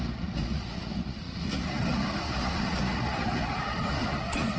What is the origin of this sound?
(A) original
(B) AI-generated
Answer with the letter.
B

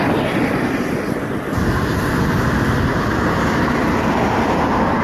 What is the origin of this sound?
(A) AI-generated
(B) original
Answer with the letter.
B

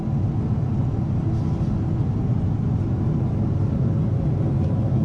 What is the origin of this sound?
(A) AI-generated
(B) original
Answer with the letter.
B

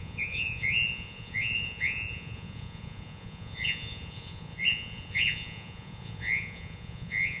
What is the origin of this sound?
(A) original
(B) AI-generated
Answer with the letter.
B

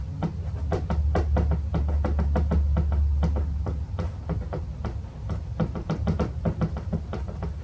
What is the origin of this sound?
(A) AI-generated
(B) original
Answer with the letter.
B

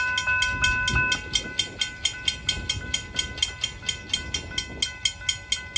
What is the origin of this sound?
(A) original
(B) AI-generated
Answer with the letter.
A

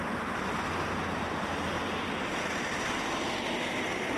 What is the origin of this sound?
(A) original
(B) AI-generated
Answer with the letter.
A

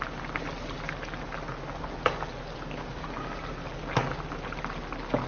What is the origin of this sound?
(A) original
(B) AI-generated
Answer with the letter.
A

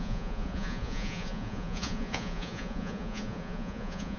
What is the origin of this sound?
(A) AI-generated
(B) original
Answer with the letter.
A